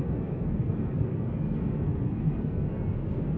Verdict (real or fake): fake